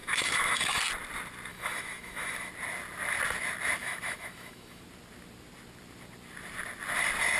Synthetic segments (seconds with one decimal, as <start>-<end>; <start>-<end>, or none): 0.0-0.8; 1.5-2.5; 3.8-4.8